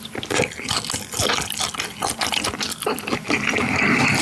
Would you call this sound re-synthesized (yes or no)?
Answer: no